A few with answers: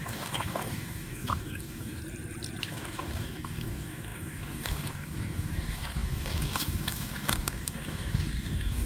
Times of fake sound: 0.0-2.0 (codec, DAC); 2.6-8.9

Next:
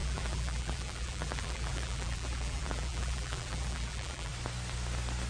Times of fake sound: 0.0-4.3 (vocoder, BigVGAN v2)